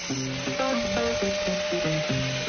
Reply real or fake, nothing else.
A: real